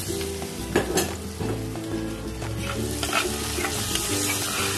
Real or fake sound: real